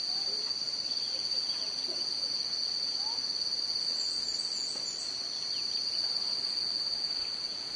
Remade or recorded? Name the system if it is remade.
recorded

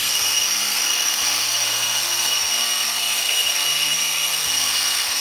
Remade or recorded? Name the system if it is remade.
remade, codec, SNAC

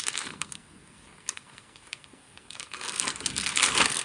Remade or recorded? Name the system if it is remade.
remade, codec, SNAC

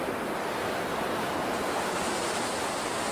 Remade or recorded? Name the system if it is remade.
recorded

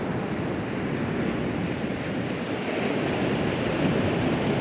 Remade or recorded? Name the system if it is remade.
recorded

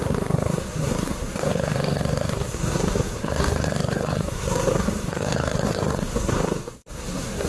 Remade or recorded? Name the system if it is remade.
remade, codec, SNAC